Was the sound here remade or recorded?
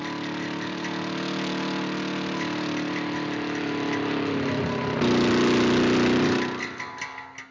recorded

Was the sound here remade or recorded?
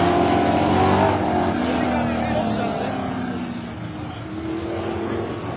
recorded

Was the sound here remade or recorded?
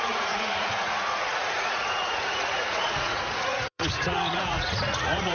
remade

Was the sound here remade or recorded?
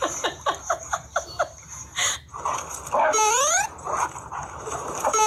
remade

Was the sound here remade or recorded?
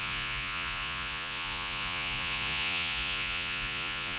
remade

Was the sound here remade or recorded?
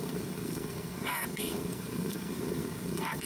remade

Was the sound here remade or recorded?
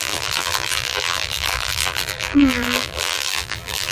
remade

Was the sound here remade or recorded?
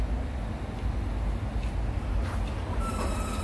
recorded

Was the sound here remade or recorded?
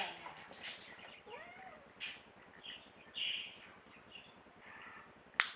recorded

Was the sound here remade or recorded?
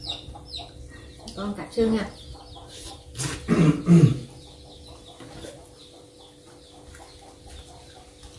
recorded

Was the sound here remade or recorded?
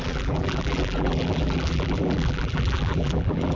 remade